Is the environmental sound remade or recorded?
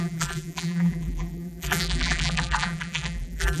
remade